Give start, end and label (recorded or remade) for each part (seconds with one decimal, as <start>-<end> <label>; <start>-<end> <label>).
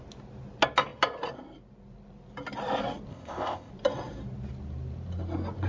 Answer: 0.0-3.1 recorded; 3.1-3.7 remade; 3.7-5.7 recorded